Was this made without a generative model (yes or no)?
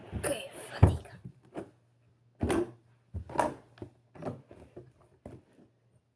yes